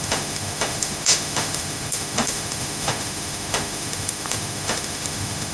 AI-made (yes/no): yes